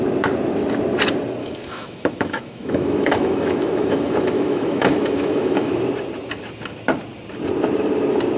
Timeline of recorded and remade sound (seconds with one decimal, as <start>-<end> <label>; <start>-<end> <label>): 0.0-1.4 recorded; 1.4-5.7 remade; 5.7-8.4 recorded